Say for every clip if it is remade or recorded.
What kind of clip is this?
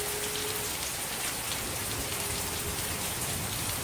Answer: recorded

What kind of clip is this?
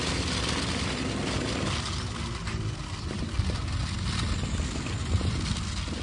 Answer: recorded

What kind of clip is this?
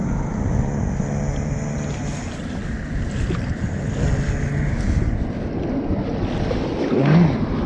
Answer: recorded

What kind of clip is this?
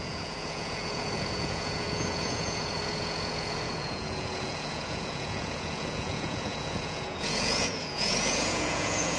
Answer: remade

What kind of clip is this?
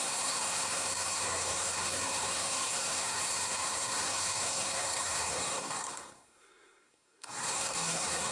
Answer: remade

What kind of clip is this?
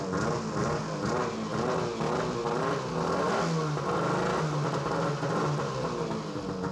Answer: recorded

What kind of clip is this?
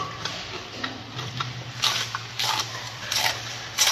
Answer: remade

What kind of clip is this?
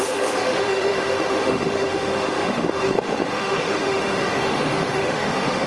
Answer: remade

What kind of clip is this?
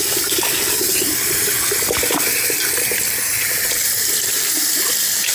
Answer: recorded